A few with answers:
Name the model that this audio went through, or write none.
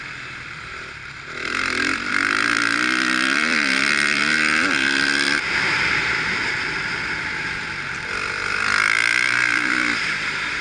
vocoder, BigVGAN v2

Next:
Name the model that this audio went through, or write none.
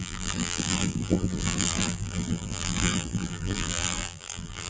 vocoder, BigVGAN v2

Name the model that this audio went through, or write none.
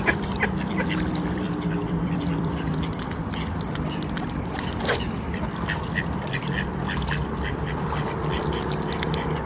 vocoder, BigVGAN v2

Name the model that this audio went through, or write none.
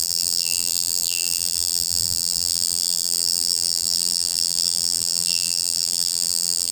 vocoder, BigVGAN v2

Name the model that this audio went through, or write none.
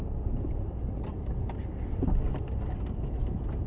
vocoder, BigVGAN v2